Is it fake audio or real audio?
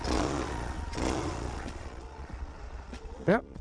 fake